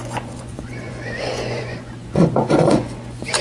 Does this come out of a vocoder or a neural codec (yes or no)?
yes